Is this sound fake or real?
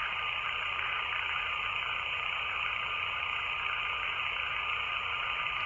fake